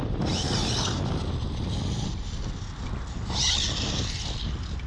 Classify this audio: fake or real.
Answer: real